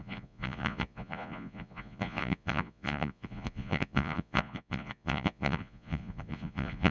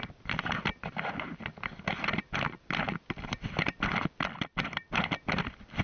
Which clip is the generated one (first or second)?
first